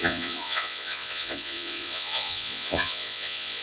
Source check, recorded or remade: remade